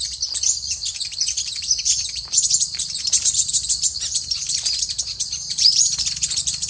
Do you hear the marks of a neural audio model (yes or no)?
yes